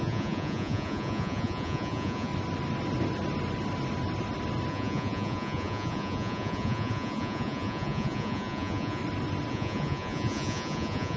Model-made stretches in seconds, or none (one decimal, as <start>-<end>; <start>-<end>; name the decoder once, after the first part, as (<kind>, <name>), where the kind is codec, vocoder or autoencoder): 0.0-2.3 (vocoder, Vocos); 4.7-9.0; 9.5-11.2